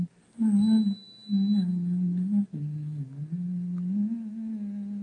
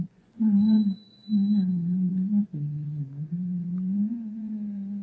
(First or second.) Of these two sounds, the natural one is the first